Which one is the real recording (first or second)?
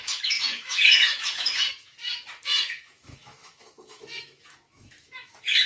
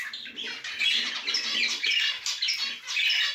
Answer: second